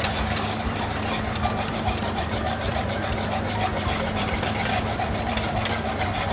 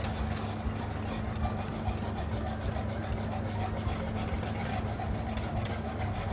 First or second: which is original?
second